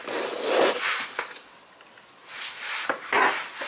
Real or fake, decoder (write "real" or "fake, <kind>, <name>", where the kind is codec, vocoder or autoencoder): real